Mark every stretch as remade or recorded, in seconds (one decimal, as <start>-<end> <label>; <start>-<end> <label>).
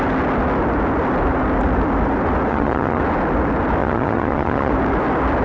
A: 0.0-2.5 recorded; 2.5-3.0 remade; 3.0-3.8 recorded; 3.8-4.7 remade; 4.7-5.4 recorded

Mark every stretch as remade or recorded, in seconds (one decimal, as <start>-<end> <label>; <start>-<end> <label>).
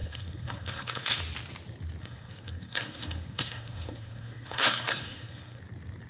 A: 0.0-1.2 remade; 1.2-2.0 recorded; 2.0-5.6 remade; 5.6-6.1 recorded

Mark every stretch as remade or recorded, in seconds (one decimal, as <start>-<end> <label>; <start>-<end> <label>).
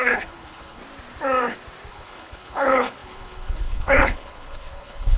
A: 0.0-0.8 remade; 0.8-1.9 recorded; 1.9-5.2 remade